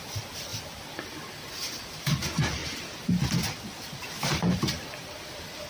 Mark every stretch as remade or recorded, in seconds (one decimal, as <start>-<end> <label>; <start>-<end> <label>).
0.0-2.6 recorded; 2.6-5.7 remade